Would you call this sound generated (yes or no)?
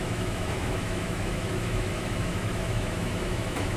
yes